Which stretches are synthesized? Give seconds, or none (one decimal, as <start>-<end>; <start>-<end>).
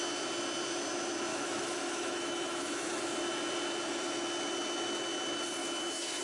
1.3-3.0; 5.6-6.2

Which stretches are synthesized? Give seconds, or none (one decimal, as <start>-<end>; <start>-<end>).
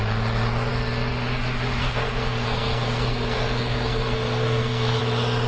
1.8-5.0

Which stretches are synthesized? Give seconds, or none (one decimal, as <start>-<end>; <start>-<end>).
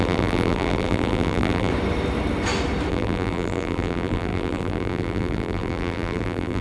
0.0-1.7; 2.9-6.6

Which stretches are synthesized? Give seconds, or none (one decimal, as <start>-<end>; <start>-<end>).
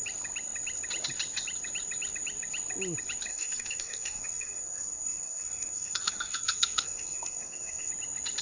3.3-7.9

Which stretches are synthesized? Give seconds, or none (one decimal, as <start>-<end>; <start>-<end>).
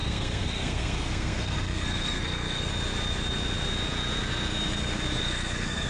0.0-2.7; 5.2-5.9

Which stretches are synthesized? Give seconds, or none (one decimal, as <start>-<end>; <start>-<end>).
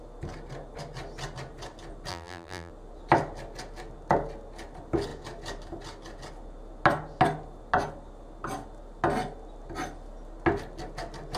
2.1-2.7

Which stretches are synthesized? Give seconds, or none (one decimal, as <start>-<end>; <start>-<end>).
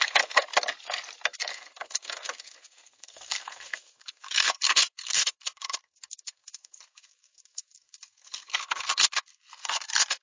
0.0-0.5; 1.5-10.2